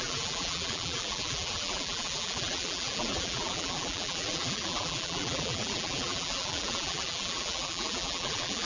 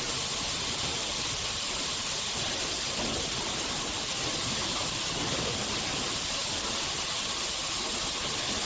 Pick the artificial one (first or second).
first